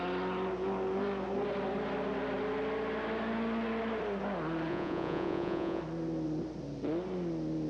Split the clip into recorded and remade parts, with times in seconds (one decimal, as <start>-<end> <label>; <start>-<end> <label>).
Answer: 0.0-4.7 recorded; 4.7-5.8 remade; 5.8-7.7 recorded